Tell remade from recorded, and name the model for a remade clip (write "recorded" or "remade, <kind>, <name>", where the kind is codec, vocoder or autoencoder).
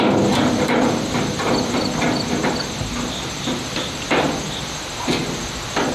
recorded